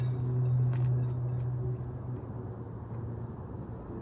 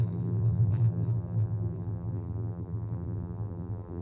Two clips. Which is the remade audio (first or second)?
second